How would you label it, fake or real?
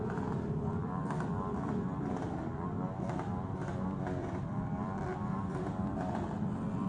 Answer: fake